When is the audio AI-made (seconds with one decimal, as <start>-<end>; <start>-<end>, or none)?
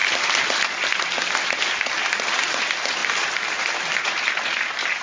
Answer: none